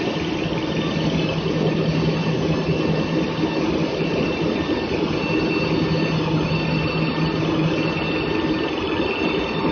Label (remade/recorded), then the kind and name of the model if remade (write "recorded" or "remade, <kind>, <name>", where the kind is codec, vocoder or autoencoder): recorded